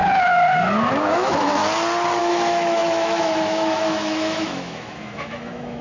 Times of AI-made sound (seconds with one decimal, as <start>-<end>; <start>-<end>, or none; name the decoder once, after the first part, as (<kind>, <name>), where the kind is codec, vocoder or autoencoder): 0.9-1.6 (autoencoder, DAC-VAE); 2.2-5.8